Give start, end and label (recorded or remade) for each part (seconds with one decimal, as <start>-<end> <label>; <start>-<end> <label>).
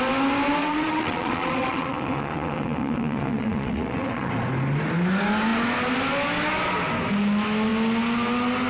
0.0-0.6 recorded; 0.6-4.3 remade; 4.3-8.7 recorded